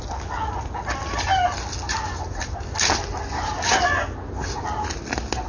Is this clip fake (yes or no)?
no